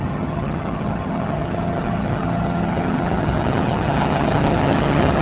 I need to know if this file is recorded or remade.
remade